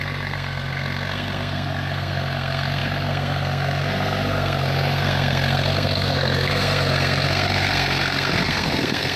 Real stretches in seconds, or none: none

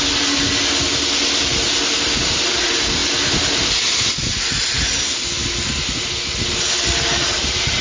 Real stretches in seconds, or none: 0.0-7.8

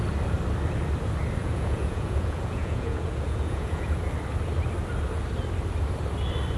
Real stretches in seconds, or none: 0.0-1.4; 4.0-6.6

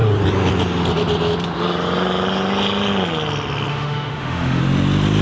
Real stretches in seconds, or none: 0.0-3.7; 4.6-5.2